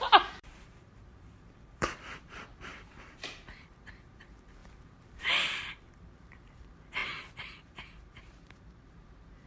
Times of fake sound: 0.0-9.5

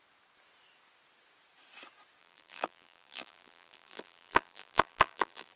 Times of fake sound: 2.2-5.6